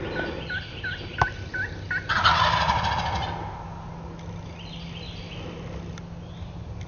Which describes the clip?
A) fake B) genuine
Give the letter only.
B